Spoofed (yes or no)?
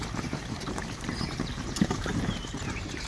yes